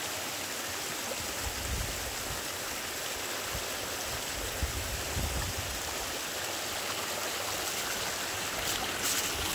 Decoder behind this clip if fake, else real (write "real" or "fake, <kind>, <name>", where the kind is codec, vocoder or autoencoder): real